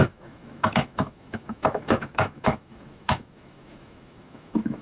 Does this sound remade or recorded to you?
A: remade